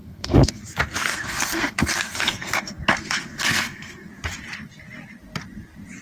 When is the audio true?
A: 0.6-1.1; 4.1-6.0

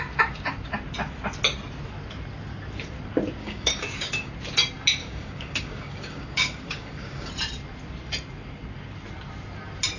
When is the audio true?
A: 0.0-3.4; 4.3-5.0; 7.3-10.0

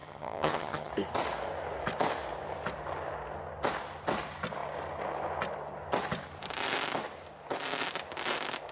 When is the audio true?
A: 0.9-8.7